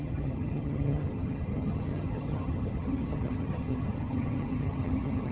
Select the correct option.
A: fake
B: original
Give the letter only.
A